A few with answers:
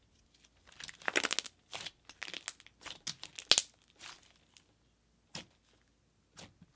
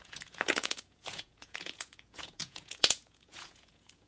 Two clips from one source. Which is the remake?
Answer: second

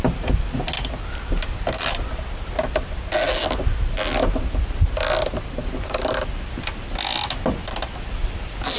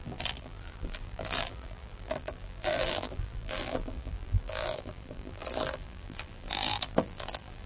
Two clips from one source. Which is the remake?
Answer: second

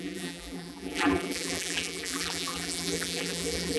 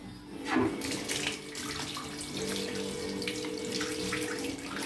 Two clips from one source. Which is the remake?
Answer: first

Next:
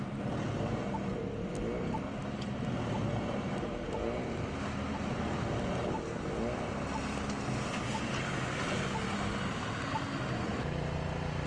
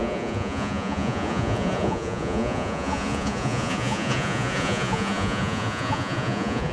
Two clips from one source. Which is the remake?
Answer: second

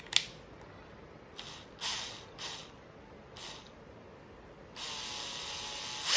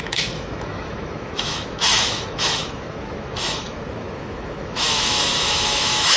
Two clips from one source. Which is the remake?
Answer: second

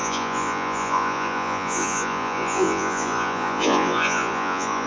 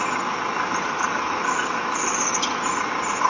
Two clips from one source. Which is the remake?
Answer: first